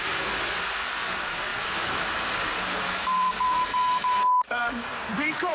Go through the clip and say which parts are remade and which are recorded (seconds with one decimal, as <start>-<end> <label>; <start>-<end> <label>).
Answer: 0.0-5.5 recorded